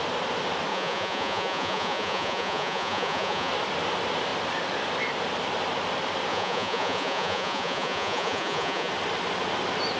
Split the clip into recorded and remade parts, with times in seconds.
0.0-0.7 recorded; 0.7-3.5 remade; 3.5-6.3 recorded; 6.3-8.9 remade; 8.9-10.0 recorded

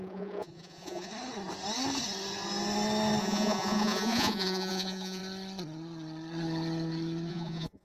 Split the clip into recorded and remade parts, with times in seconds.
0.0-1.1 remade; 1.1-3.2 recorded; 3.2-5.2 remade; 5.2-7.3 recorded; 7.3-7.8 remade

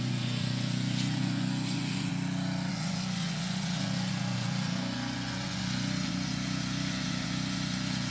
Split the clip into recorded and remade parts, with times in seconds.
0.0-2.1 remade; 2.1-2.7 recorded; 2.7-8.1 remade

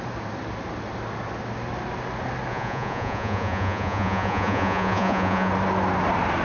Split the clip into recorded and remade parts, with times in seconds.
0.0-2.5 recorded; 2.5-5.5 remade; 5.5-6.4 recorded

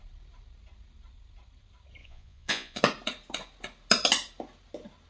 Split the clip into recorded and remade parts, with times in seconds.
0.0-2.0 recorded; 2.0-2.8 remade; 2.8-5.1 recorded

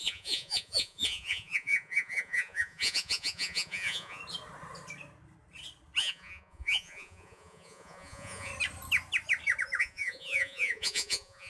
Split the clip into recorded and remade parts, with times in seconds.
0.0-4.2 remade; 4.2-6.0 recorded; 6.0-8.5 remade; 8.5-9.8 recorded; 9.8-11.5 remade